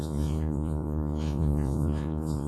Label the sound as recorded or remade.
remade